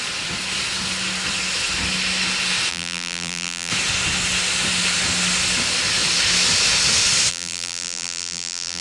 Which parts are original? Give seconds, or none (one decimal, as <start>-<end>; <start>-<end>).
0.0-2.7; 3.7-7.3